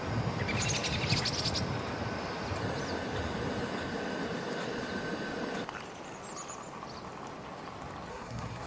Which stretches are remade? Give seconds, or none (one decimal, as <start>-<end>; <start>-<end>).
8.1-8.7